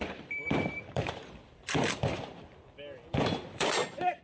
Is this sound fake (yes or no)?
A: yes